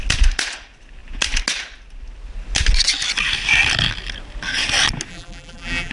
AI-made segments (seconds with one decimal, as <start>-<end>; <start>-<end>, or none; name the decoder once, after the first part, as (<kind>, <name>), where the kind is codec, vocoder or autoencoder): 5.1-5.9 (vocoder, BigVGAN v2)